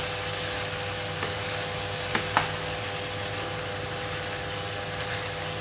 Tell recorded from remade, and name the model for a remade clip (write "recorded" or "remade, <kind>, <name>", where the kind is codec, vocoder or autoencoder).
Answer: recorded